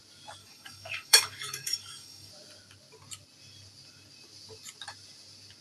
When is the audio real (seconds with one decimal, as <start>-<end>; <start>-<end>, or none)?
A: 0.0-0.4; 2.3-5.6